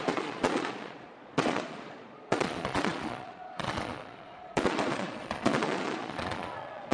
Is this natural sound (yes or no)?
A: no